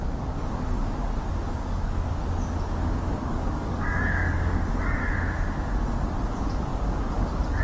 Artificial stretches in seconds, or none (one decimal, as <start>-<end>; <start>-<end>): 0.0-2.2; 3.0-5.0; 6.3-7.6